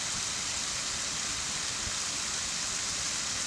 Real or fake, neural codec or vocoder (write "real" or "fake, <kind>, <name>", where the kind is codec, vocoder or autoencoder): real